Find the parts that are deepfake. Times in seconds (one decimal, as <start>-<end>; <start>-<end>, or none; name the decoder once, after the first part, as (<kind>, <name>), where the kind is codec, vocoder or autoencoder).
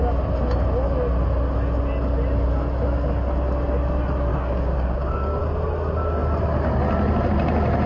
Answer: 4.3-5.4 (codec, DAC)